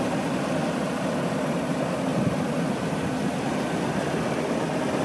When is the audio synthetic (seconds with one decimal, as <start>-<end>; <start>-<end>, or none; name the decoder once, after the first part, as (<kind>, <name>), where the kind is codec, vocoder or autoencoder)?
none